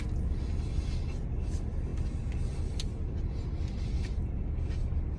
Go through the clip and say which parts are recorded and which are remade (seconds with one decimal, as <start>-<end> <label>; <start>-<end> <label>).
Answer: 0.0-5.2 recorded